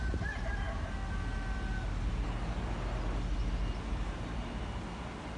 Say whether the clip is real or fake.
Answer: real